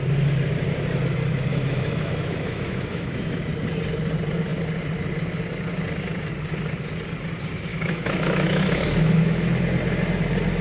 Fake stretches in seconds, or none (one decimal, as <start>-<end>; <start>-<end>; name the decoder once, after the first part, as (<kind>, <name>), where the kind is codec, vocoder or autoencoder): 1.5-3.4 (autoencoder, DAC-VAE); 7.7-9.5